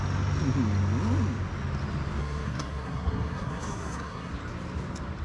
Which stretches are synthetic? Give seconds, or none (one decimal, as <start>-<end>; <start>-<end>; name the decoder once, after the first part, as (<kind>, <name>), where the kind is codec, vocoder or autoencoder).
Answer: 2.2-4.3 (codec, SNAC)